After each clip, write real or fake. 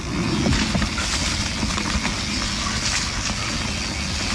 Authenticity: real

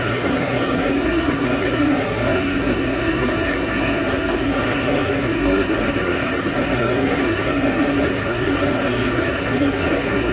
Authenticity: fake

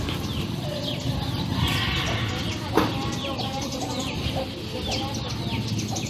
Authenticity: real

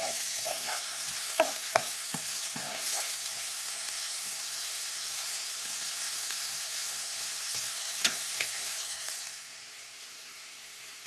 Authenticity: fake